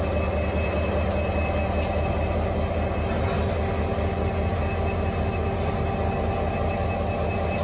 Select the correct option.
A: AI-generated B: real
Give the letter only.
B